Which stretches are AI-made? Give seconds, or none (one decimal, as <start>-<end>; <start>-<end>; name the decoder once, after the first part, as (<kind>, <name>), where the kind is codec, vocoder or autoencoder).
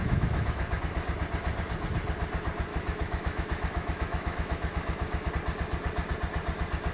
0.0-0.8 (autoencoder, DAC-VAE); 2.7-5.3